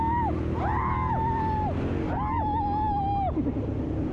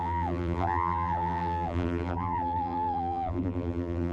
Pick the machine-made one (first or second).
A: second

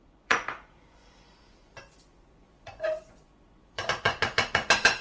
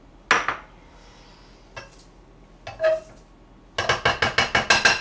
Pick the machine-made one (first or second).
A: first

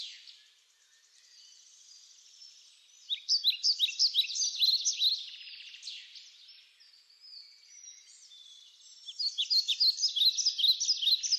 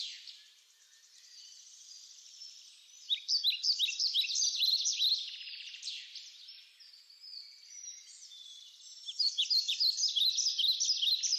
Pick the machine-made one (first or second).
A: second